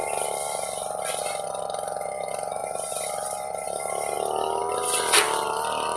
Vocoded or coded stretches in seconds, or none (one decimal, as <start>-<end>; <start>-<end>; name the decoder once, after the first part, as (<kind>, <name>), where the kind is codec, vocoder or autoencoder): 0.0-1.1 (vocoder, BigVGAN v2)